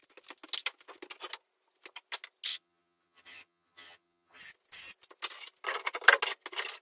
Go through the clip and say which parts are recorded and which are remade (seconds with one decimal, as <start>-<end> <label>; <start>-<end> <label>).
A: 0.0-2.5 recorded; 2.5-4.4 remade; 4.4-6.8 recorded